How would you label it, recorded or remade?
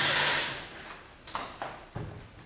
recorded